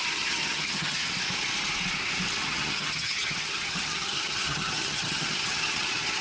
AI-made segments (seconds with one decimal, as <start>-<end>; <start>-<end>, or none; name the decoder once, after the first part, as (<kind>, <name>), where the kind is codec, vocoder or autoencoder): 0.0-1.1 (vocoder, HiFi-GAN); 2.4-6.2